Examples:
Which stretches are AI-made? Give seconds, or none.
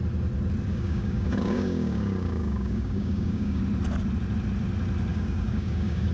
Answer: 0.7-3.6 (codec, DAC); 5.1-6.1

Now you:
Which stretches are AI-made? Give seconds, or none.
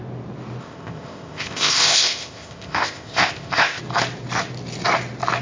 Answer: 0.6-3.8 (codec, ZipCodec)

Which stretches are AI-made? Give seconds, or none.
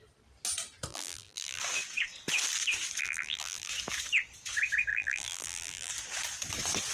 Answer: 0.9-1.6 (vocoder, BigVGAN v2); 3.0-3.7; 4.9-5.9